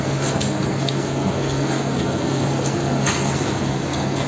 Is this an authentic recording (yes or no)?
no